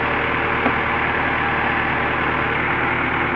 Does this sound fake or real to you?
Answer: real